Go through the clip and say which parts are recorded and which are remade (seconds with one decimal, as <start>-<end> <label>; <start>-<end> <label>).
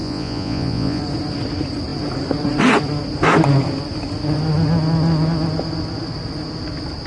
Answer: 0.0-1.0 remade; 1.0-7.1 recorded